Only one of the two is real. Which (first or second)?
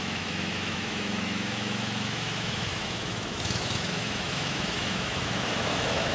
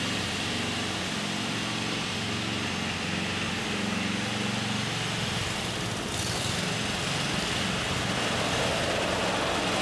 second